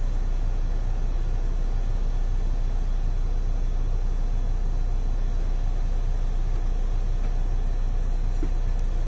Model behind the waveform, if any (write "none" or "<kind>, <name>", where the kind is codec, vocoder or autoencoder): none